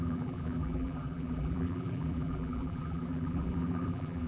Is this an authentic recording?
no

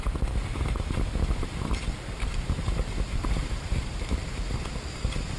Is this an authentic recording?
no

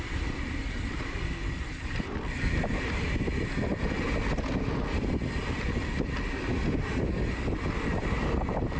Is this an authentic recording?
yes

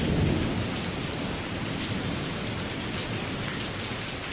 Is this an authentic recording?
yes